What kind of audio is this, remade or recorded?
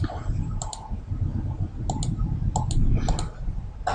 recorded